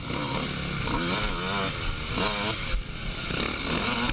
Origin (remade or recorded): recorded